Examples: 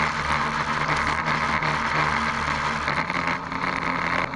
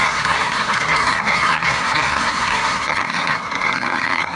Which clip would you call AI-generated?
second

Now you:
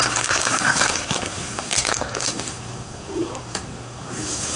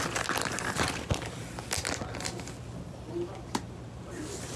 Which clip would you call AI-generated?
first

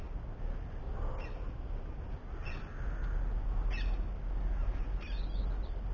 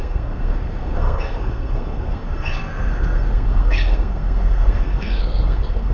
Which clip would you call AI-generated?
second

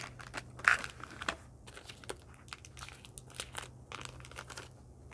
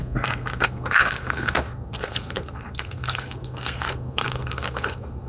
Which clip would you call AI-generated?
second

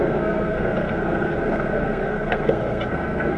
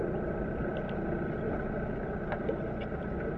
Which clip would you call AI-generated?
first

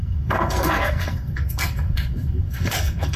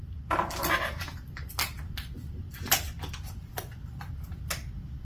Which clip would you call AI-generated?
first